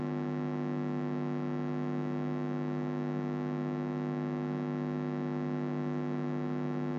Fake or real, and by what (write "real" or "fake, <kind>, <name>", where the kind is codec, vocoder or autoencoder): real